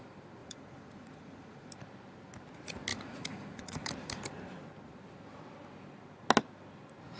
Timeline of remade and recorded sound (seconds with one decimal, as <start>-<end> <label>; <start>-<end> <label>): 0.0-0.4 recorded; 0.4-1.7 remade; 1.7-2.9 recorded; 2.9-3.9 remade; 3.9-7.2 recorded